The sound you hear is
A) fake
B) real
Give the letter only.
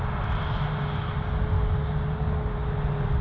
B